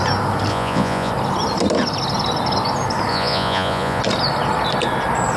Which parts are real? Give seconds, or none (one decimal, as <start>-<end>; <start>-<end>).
0.0-0.5; 1.1-3.1; 4.0-5.4